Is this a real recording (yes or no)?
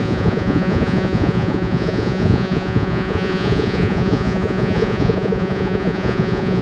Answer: no